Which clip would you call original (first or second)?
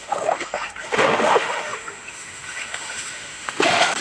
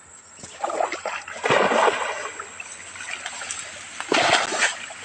second